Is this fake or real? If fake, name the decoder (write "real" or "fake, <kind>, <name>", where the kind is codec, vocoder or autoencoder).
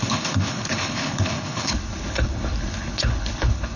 fake, codec, HILCodec